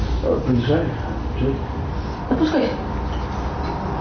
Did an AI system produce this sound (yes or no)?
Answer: no